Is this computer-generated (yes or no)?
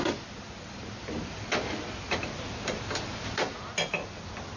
no